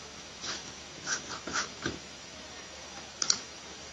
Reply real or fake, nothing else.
fake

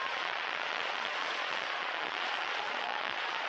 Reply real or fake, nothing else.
fake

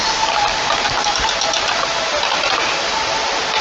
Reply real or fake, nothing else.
real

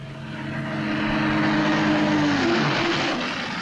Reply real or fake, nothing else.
real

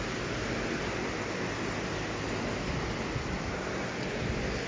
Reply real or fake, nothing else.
real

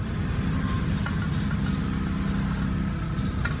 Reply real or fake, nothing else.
real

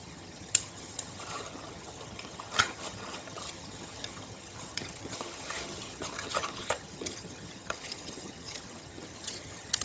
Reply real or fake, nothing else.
fake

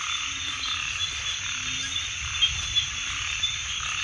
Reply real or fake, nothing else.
real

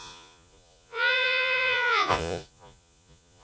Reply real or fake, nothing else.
fake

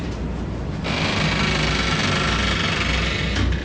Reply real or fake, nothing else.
real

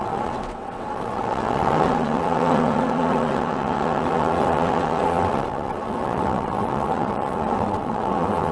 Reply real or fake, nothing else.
fake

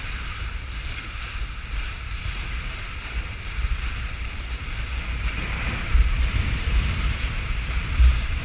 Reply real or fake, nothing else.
fake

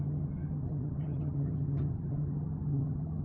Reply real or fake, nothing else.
fake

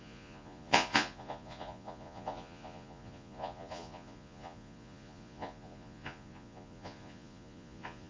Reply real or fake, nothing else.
fake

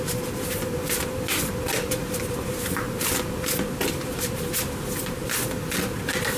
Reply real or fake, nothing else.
real